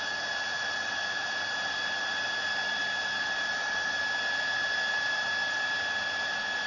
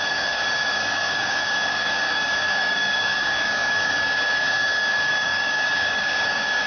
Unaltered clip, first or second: first